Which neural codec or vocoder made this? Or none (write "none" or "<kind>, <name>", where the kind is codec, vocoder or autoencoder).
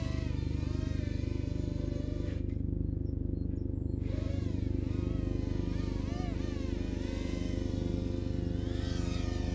none